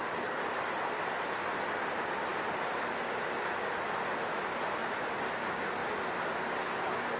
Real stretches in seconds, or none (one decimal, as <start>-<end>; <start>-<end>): 0.0-4.8; 5.3-7.2